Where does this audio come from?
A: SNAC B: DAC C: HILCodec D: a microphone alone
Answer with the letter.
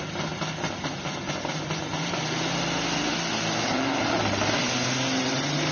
D